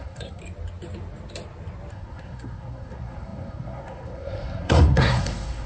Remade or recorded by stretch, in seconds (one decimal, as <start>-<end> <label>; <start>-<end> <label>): 0.0-0.4 remade; 0.4-1.9 recorded; 1.9-5.7 remade

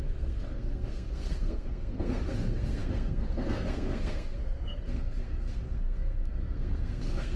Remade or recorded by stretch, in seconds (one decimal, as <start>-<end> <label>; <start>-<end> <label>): 0.0-7.4 remade